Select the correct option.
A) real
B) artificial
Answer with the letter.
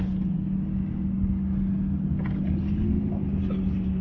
A